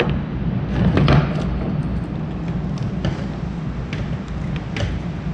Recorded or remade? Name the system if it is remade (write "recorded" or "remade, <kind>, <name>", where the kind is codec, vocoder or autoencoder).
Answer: recorded